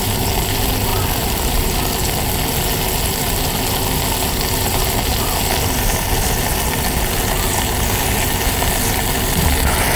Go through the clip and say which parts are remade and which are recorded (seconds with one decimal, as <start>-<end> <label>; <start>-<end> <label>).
0.0-10.0 recorded